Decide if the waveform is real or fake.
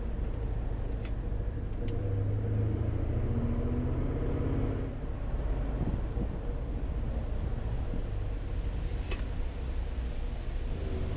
real